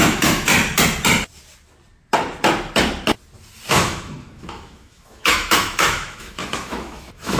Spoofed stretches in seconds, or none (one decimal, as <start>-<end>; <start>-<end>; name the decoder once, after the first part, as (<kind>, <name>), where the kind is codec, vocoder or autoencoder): 0.0-0.5 (autoencoder, DAC-VAE); 3.7-7.4